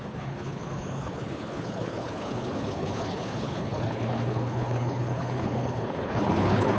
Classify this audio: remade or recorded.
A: remade